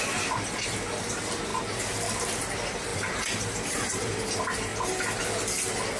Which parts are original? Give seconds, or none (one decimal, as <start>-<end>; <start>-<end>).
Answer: 0.0-2.9; 4.2-4.7; 5.2-6.0